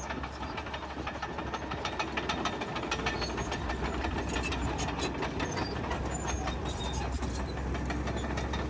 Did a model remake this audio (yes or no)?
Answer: no